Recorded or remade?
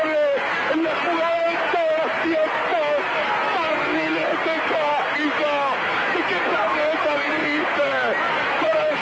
recorded